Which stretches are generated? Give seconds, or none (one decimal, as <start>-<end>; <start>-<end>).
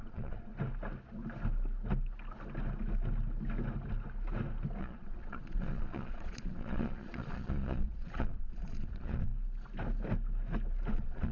0.0-0.5; 4.8-9.3; 10.9-11.3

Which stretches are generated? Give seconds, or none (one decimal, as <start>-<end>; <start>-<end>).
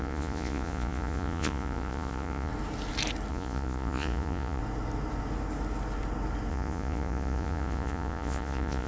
0.0-2.5; 3.3-4.6; 6.5-8.9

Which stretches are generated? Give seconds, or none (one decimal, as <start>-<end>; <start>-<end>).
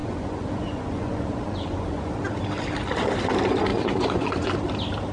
0.0-2.1; 3.7-4.5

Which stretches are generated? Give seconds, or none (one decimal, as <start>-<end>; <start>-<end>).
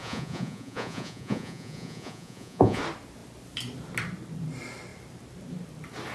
0.0-2.8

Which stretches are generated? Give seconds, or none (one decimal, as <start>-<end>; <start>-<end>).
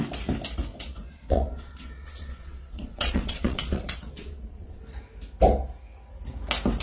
0.7-4.8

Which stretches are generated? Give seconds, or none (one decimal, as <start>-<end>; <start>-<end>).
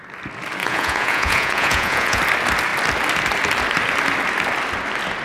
0.6-2.2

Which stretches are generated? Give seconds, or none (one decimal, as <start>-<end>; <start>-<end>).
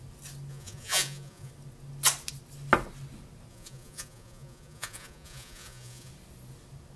0.5-1.5; 3.5-6.1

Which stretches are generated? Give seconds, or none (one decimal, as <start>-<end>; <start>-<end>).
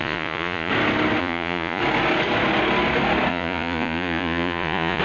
0.0-0.7; 1.2-1.8; 3.3-5.0